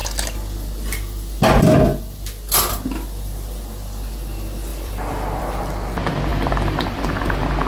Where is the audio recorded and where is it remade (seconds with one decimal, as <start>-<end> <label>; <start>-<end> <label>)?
0.0-4.7 recorded; 4.7-5.4 remade; 5.4-6.3 recorded; 6.3-7.1 remade; 7.1-7.7 recorded

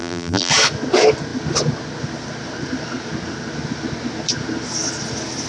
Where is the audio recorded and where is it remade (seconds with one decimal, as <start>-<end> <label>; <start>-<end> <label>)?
0.0-0.5 remade; 0.5-5.5 recorded

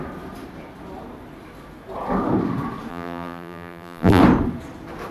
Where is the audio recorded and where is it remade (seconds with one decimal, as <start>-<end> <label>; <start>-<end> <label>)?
0.0-2.9 recorded; 2.9-4.2 remade; 4.2-5.1 recorded

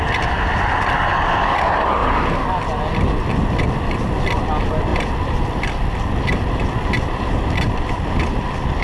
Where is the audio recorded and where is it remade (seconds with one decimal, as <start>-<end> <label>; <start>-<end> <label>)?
0.0-8.8 recorded

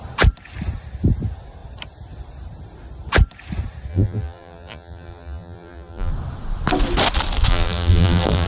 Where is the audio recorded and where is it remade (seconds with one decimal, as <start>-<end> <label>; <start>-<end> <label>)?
0.0-3.9 recorded; 3.9-6.1 remade; 6.1-7.5 recorded; 7.5-8.5 remade

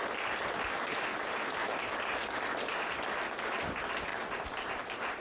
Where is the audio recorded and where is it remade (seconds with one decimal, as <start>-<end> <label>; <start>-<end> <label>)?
0.0-1.6 recorded; 1.6-2.2 remade; 2.2-4.1 recorded; 4.1-4.8 remade; 4.8-5.2 recorded

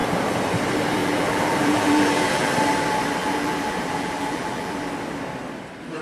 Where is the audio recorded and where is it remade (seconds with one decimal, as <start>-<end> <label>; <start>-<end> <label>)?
0.0-1.0 recorded; 1.0-2.5 remade; 2.5-3.2 recorded; 3.2-4.9 remade; 4.9-6.0 recorded